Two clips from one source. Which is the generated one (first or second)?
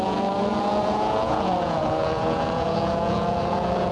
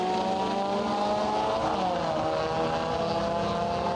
first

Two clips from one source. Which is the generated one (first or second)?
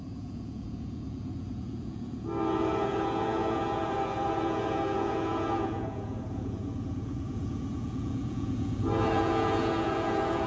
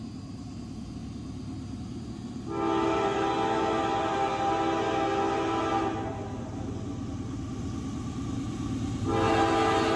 first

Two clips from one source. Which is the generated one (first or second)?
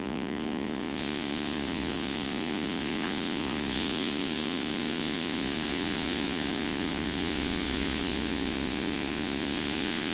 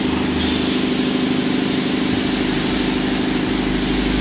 first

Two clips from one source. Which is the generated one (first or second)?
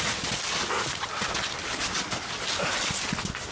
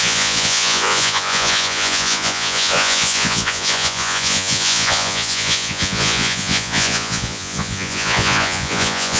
second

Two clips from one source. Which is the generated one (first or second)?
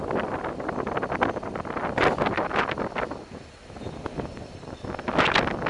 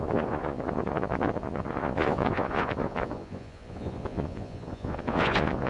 second